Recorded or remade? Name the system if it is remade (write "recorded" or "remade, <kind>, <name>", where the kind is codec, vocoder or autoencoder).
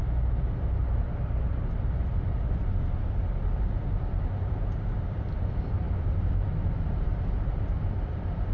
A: recorded